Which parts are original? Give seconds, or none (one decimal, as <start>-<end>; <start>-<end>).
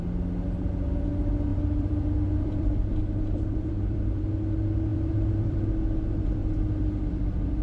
0.0-1.5; 4.3-4.9; 5.6-6.4